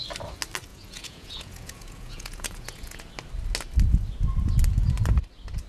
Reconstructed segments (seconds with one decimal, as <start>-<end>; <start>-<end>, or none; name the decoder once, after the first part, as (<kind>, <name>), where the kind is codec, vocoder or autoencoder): 0.7-3.1 (vocoder, Vocos)